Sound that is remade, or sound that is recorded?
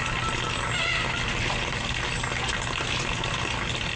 recorded